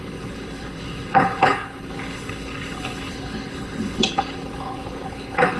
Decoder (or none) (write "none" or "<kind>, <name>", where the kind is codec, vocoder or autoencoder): codec, HILCodec